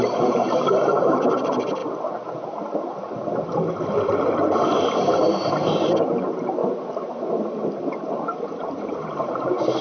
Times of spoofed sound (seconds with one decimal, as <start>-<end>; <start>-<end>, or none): 0.0-1.8; 5.0-6.6; 7.7-9.8